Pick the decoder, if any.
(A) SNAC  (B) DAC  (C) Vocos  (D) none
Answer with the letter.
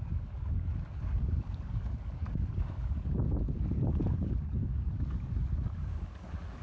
B